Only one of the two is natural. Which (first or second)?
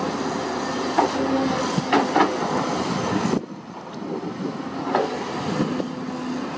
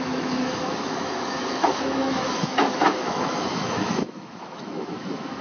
first